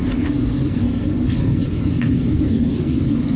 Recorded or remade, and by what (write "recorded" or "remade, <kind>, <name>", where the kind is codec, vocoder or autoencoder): remade, codec, SNAC